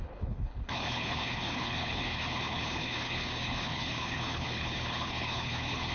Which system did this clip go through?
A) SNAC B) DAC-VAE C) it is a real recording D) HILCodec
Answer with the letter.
D